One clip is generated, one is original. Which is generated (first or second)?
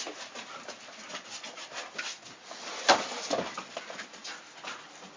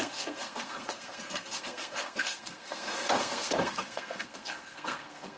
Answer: second